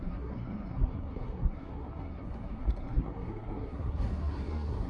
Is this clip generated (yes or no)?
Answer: yes